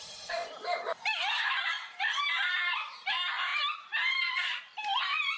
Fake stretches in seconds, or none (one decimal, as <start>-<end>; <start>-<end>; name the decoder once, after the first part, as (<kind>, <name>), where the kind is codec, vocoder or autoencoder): 0.0-5.4 (vocoder, BigVGAN v2)